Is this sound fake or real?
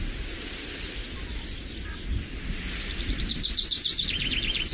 real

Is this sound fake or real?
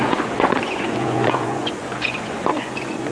fake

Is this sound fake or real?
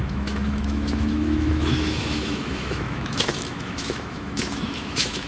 fake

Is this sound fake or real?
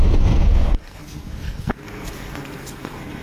fake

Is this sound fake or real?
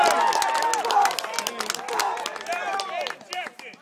real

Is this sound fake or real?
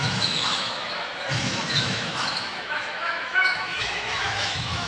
fake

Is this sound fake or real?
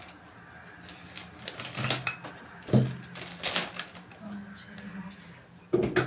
real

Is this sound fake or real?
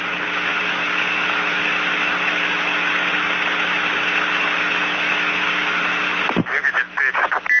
real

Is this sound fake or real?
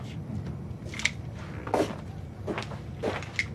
real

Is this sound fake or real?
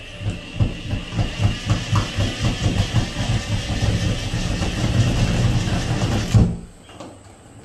real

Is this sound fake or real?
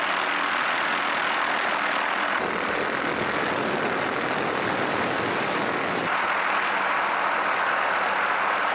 real